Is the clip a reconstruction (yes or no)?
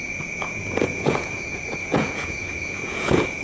yes